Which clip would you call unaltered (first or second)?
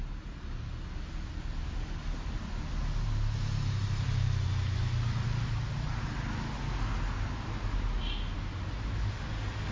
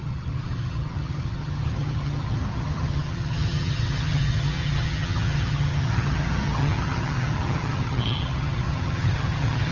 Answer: first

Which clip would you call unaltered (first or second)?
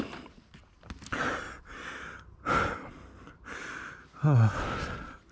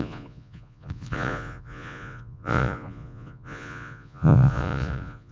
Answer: first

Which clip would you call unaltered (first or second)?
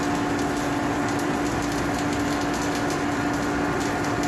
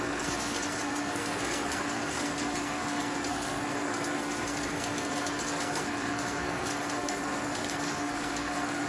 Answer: first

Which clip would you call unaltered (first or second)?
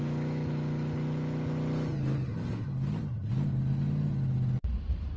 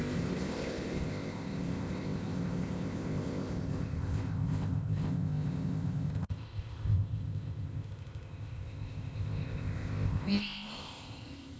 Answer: first